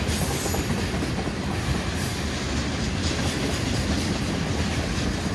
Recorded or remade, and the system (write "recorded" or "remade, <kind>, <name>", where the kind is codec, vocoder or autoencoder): recorded